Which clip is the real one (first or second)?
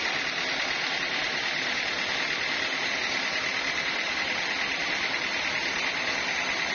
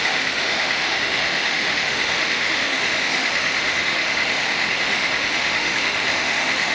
first